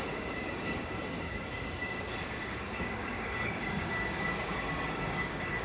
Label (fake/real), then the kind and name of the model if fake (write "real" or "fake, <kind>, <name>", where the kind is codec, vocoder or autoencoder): fake, codec, DAC